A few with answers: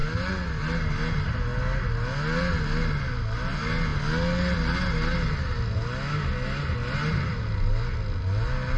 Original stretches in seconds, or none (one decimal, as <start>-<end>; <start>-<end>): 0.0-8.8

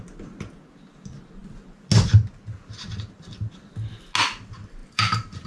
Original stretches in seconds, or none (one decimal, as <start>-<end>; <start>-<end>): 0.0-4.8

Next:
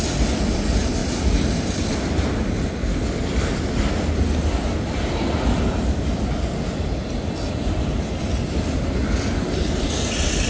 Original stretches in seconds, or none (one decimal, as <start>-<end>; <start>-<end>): 0.0-10.5

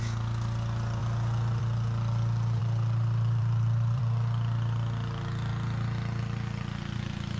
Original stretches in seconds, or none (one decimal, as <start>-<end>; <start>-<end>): 0.0-2.6; 4.0-7.4

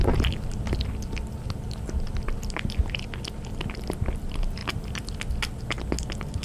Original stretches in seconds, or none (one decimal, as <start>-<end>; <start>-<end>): 0.0-6.4